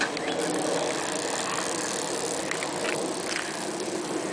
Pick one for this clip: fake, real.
real